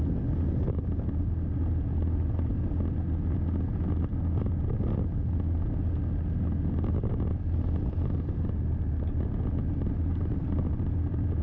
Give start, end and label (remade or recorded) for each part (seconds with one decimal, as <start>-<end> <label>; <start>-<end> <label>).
0.0-11.4 recorded